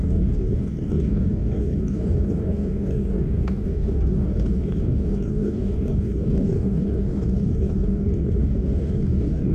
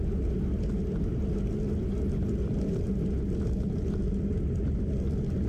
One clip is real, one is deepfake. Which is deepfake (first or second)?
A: first